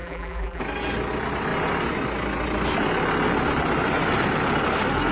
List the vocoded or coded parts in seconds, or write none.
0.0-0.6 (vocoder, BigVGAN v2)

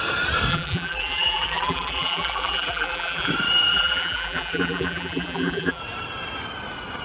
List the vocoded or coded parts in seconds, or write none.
0.5-3.3 (vocoder, BigVGAN v2); 3.7-5.8

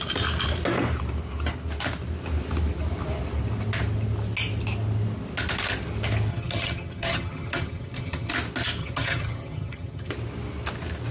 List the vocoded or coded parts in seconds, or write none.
6.3-8.3 (vocoder, HiFi-GAN); 8.8-10.1

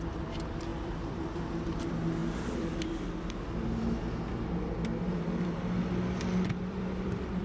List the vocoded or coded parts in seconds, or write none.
0.0-2.2 (vocoder, BigVGAN v2); 6.6-7.4